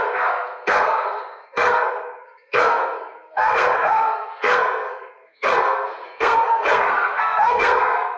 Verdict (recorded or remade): remade